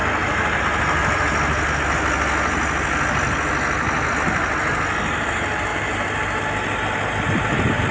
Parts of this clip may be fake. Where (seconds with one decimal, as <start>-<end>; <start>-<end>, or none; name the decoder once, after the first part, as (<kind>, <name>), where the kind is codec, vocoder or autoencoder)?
none